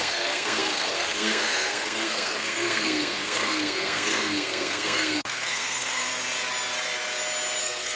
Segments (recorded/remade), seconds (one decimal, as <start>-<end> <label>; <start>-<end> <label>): 0.0-6.1 remade; 6.1-7.6 recorded; 7.6-8.0 remade